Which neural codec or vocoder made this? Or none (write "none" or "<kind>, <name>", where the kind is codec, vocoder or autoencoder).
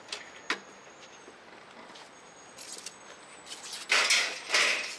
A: none